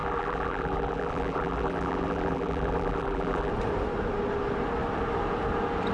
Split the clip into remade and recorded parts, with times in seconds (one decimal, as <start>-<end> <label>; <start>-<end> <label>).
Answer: 0.0-3.5 remade; 3.5-5.9 recorded